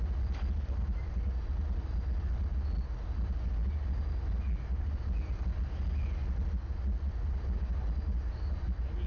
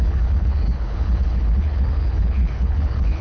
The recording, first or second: first